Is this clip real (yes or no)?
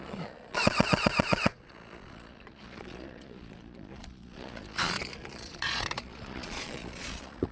no